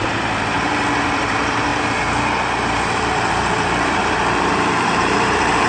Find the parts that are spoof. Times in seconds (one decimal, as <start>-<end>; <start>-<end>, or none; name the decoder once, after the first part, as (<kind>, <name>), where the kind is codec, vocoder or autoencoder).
0.0-5.7 (vocoder, BigVGAN v2)